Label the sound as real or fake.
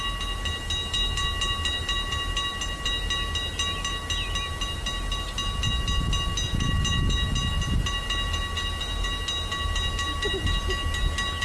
real